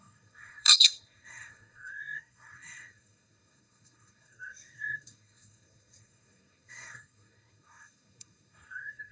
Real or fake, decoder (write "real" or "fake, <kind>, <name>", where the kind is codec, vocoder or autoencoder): fake, codec, SNAC